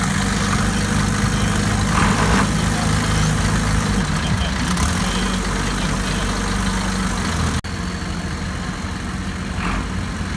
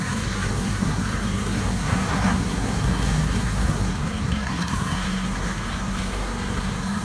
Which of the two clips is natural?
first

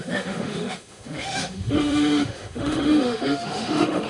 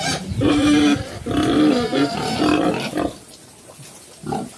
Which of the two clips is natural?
second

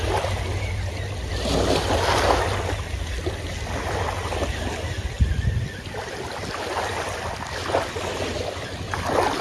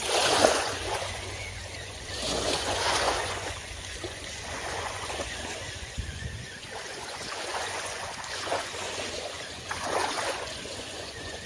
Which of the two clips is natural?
first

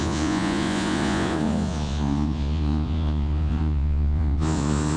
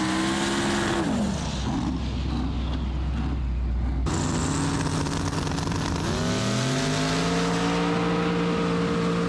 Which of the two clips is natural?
second